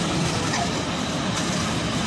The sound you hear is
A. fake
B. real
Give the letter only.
B